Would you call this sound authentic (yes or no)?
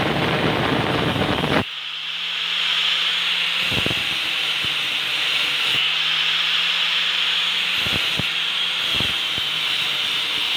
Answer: no